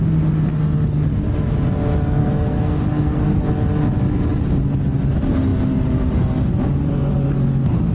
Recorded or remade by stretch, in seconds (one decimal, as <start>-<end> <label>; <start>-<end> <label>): 0.0-2.2 recorded; 2.2-3.5 remade; 3.5-7.9 recorded